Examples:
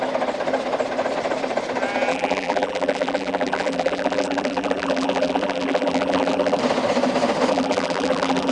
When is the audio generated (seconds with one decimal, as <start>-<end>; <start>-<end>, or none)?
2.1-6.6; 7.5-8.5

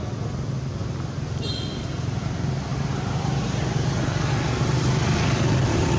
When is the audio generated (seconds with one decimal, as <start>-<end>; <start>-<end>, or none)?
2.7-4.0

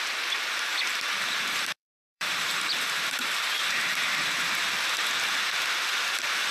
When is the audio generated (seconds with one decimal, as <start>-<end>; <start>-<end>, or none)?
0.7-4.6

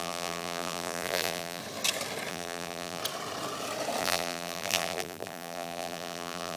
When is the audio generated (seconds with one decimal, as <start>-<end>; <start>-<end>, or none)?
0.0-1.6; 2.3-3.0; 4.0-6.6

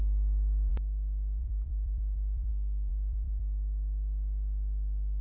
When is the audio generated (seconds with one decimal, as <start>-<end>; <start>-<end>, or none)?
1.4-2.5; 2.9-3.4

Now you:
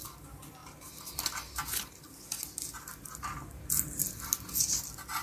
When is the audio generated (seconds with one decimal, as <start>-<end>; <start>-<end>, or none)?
none